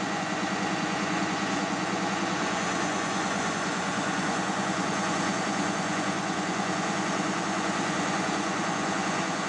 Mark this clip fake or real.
fake